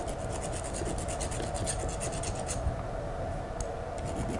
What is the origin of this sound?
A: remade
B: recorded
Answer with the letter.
B